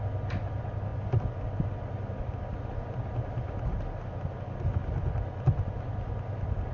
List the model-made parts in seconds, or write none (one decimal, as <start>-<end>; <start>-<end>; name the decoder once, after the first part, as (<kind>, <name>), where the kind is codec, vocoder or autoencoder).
none